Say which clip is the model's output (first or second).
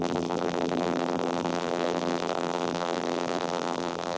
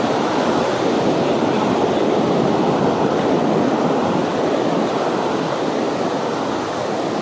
first